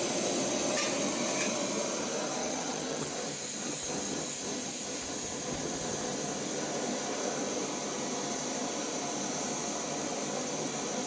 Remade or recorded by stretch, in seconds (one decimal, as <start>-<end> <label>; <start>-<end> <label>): 0.0-2.4 recorded; 2.4-3.1 remade; 3.1-11.1 recorded